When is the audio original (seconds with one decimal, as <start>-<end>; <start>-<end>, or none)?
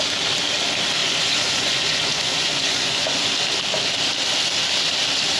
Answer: 0.0-1.0; 3.3-5.4